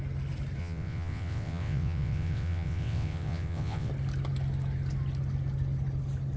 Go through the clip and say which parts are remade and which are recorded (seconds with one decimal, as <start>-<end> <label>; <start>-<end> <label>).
0.0-0.6 recorded; 0.6-3.9 remade; 3.9-6.4 recorded